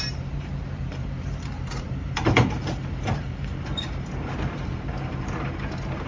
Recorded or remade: remade